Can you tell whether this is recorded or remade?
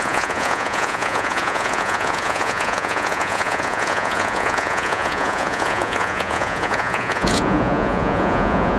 remade